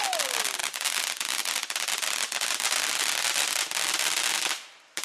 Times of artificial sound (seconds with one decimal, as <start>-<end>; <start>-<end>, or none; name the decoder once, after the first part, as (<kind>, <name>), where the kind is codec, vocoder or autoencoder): none